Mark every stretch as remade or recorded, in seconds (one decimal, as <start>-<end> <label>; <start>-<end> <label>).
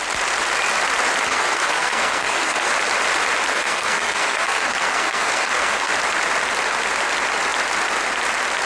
0.0-1.3 recorded; 1.3-2.7 remade; 2.7-3.5 recorded; 3.5-5.9 remade; 5.9-8.7 recorded